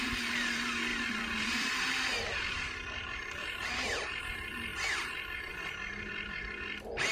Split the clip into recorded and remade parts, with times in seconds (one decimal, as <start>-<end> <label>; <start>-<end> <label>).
0.0-0.9 recorded; 0.9-4.2 remade; 4.2-7.1 recorded